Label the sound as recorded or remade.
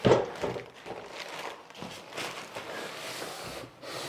recorded